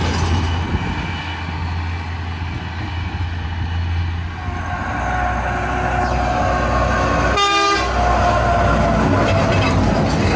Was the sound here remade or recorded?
recorded